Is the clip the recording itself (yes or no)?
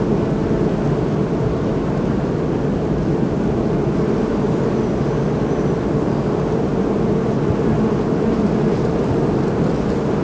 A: yes